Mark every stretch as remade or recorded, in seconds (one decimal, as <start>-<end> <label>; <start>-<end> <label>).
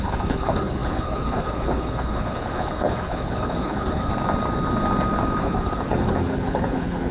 0.0-4.1 remade; 4.1-5.4 recorded; 5.4-7.1 remade